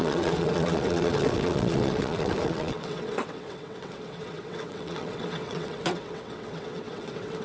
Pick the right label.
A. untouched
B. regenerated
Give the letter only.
B